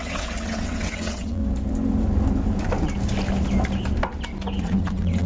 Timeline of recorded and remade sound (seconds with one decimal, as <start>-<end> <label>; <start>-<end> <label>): 0.0-1.4 remade; 1.4-4.6 recorded; 4.6-5.3 remade